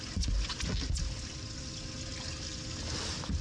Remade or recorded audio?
recorded